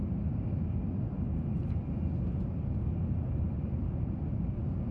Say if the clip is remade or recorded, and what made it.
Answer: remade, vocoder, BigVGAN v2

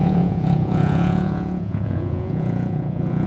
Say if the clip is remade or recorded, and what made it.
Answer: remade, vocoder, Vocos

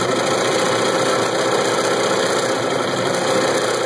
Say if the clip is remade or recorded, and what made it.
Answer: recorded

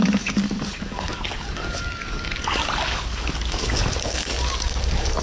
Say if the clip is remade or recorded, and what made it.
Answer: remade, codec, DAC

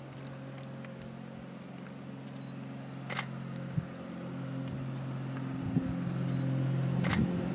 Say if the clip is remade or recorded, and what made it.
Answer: recorded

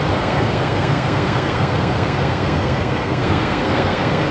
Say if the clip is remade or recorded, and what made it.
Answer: remade, codec, SNAC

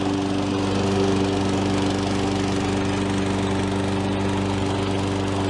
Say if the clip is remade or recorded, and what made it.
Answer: recorded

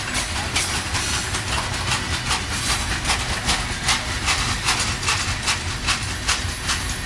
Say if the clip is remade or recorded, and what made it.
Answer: recorded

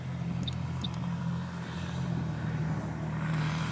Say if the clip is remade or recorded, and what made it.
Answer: remade, vocoder, BigVGAN v2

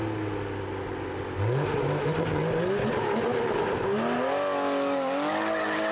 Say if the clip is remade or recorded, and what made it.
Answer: recorded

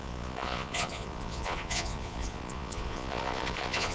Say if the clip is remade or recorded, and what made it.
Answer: remade, vocoder, Vocos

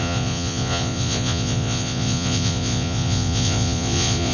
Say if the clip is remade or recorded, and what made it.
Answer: remade, vocoder, Vocos